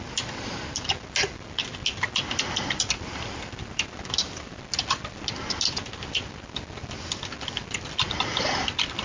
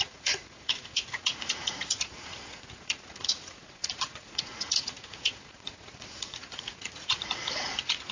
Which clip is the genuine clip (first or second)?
first